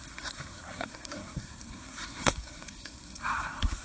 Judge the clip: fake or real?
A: fake